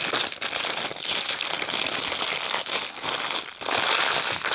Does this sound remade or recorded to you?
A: recorded